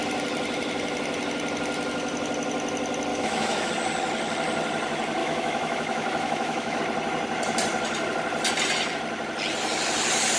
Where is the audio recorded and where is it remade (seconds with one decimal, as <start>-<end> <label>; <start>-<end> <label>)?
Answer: 0.0-3.1 recorded; 3.1-3.7 remade; 3.7-5.2 recorded; 5.2-6.8 remade; 6.8-10.4 recorded